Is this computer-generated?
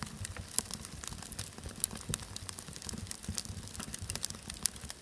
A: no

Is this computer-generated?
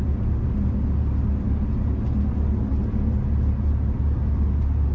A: no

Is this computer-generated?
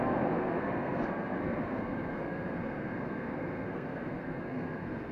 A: yes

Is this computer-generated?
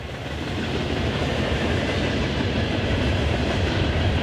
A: yes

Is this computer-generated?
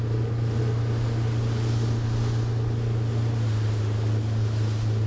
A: no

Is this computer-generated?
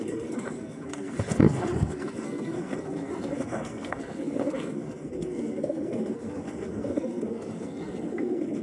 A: yes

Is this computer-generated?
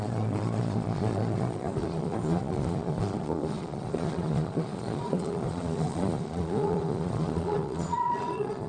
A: yes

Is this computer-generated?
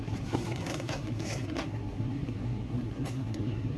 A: yes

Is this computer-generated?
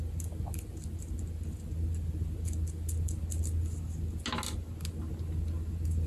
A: no